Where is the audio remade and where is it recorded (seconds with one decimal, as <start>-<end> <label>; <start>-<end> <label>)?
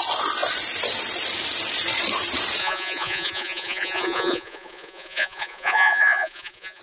0.0-2.6 recorded; 2.6-6.8 remade